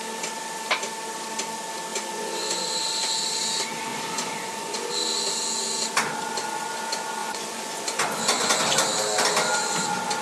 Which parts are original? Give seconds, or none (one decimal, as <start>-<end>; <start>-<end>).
0.0-1.9; 2.7-3.9; 4.9-7.2; 8.6-10.2